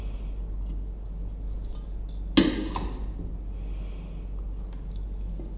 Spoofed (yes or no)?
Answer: no